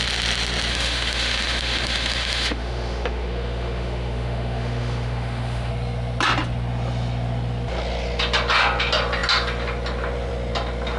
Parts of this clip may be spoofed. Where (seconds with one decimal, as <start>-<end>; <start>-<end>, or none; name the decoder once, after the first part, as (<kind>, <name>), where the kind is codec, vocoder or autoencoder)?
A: 0.7-5.7 (autoencoder, DAC-VAE)

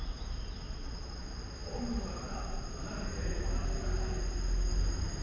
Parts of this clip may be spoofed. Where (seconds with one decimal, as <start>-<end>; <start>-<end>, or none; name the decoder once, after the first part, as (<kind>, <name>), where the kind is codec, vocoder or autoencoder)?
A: none